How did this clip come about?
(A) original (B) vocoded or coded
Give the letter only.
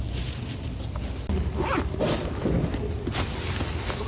A